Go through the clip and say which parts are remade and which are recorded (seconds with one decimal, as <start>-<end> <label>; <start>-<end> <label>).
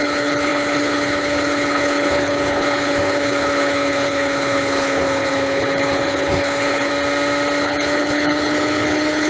0.0-6.9 remade; 6.9-7.6 recorded; 7.6-9.3 remade